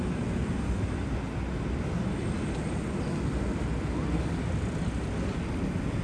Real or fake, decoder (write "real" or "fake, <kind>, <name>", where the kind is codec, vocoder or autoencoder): real